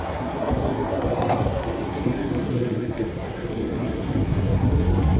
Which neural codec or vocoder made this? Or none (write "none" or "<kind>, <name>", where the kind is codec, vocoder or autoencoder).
codec, SNAC